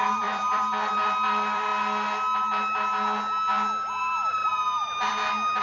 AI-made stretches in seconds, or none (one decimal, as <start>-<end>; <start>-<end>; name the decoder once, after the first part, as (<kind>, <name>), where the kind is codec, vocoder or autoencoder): 0.0-1.7 (vocoder, BigVGAN v2); 4.0-4.4